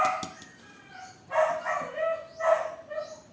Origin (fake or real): real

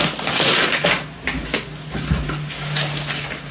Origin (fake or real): real